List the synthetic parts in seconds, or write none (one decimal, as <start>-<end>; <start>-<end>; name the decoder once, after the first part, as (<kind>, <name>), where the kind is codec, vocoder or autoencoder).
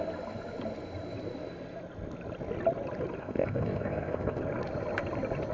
3.2-4.4 (codec, ZipCodec)